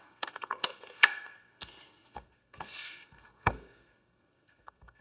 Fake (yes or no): yes